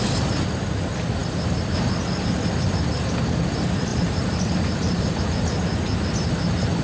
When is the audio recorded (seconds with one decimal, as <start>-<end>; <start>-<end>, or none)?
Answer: 0.0-3.9; 5.2-6.8